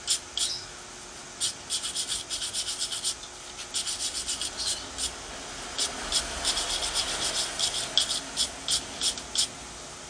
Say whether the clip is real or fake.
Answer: real